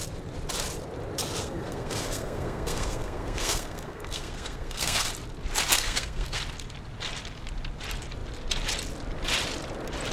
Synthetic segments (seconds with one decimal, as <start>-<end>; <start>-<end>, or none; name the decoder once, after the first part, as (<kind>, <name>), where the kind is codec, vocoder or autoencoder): 1.4-5.1 (codec, SNAC); 5.7-6.4